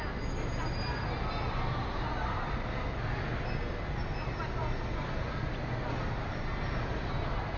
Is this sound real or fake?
real